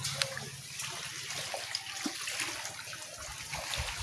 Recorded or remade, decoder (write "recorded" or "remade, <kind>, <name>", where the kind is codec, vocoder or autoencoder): recorded